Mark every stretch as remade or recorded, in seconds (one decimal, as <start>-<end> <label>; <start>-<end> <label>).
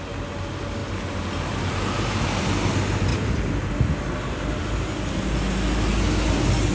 0.0-6.7 recorded